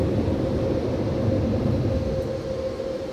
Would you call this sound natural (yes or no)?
yes